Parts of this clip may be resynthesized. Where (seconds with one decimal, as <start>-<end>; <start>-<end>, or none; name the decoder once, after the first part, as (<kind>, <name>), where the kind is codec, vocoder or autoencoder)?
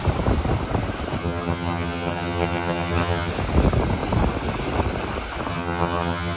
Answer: 1.2-3.3 (vocoder, HiFi-GAN); 5.5-6.4